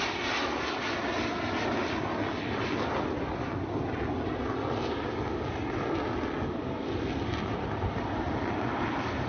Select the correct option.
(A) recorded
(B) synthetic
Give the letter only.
A